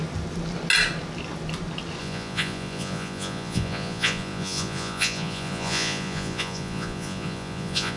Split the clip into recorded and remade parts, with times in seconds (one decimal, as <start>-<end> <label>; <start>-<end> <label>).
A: 0.0-2.0 recorded; 2.0-8.0 remade